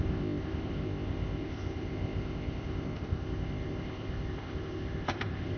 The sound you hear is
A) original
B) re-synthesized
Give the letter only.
B